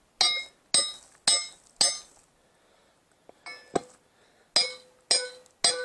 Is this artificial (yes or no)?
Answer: no